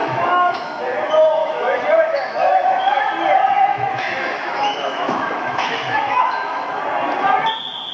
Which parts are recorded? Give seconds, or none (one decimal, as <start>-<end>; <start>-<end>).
0.8-1.4; 3.1-3.7; 6.8-7.9